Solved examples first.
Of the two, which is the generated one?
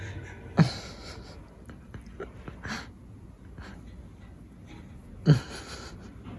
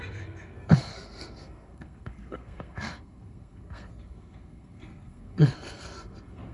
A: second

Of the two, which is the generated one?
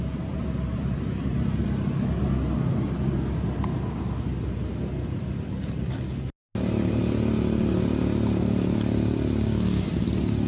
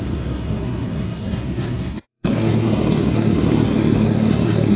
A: second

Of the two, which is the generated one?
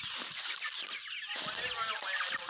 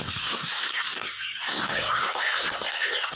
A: second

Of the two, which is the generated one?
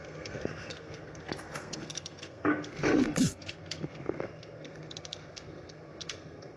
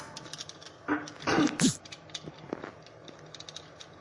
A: first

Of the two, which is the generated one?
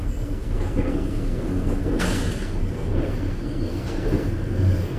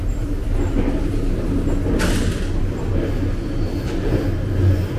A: first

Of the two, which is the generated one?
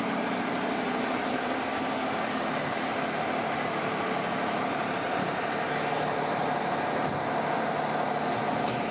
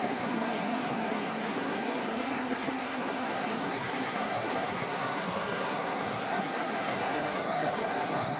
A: second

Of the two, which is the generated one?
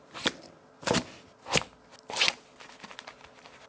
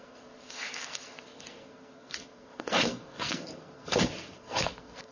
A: second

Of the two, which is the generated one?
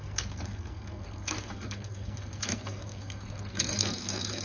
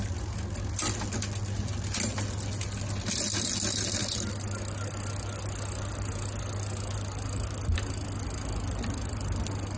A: first